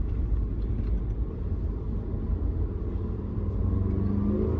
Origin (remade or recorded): recorded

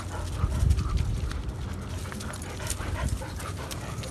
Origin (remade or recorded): recorded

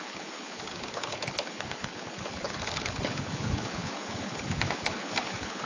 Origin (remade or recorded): remade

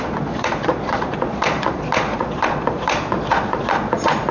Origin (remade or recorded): remade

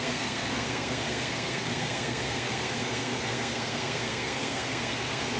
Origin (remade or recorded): remade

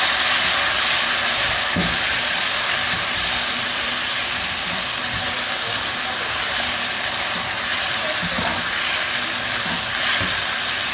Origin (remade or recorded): recorded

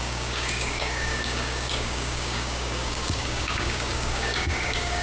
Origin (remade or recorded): remade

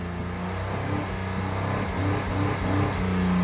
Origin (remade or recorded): recorded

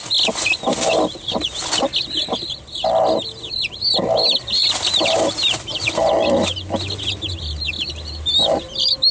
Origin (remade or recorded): recorded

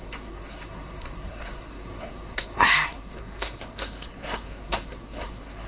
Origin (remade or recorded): remade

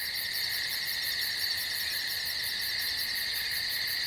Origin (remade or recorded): recorded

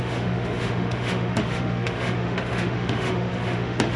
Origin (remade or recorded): remade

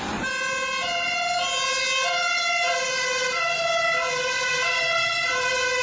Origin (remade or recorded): recorded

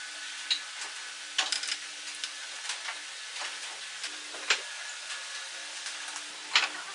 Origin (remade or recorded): recorded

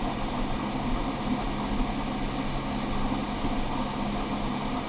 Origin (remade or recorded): recorded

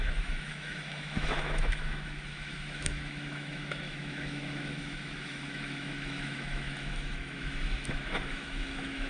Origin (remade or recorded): remade